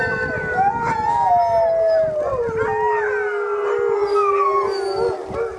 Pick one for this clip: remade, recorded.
recorded